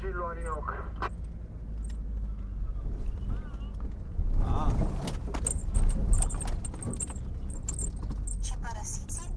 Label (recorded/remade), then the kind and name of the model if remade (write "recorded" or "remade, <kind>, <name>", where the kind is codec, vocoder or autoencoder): recorded